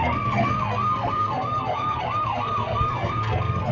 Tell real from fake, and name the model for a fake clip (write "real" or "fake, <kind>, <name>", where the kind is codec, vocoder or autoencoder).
fake, codec, SNAC